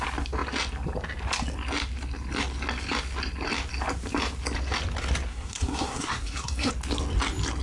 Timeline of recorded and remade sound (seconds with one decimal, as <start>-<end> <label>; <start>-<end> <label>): 0.0-5.3 recorded; 5.3-6.7 remade; 6.7-7.6 recorded